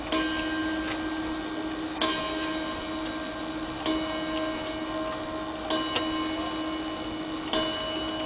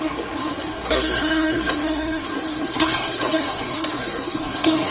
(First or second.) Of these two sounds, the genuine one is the first